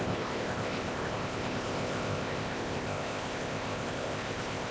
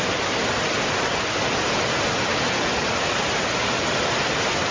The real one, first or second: second